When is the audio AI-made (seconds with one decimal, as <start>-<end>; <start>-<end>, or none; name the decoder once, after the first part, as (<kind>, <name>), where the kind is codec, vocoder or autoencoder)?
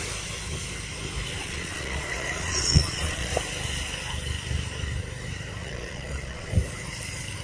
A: 1.4-3.3 (vocoder, Vocos); 5.6-6.5